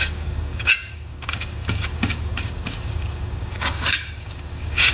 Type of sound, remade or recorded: remade